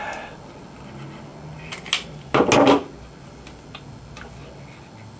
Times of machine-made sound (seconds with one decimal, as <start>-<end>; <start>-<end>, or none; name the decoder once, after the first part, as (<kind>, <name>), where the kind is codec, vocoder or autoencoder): none